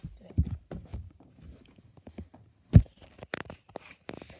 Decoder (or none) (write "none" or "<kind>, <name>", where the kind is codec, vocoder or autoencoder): vocoder, BigVGAN v2